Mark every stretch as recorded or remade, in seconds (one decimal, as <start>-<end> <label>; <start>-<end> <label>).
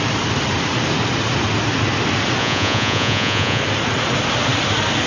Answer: 0.0-2.4 recorded; 2.4-3.6 remade; 3.6-5.1 recorded